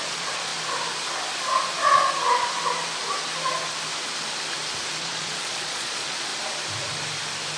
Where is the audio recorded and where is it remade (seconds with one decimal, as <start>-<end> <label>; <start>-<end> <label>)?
0.0-0.5 remade; 0.5-5.0 recorded; 5.0-6.3 remade; 6.3-7.6 recorded